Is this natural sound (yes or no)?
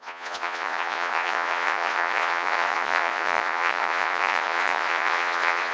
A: no